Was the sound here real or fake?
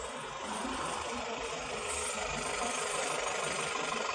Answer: real